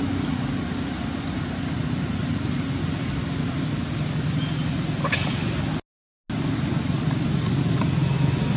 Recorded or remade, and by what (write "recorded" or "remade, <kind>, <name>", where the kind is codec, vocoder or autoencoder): recorded